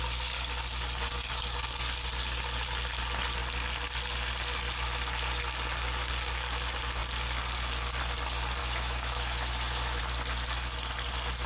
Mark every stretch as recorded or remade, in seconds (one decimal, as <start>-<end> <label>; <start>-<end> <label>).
0.0-8.6 recorded; 8.6-10.0 remade; 10.0-11.5 recorded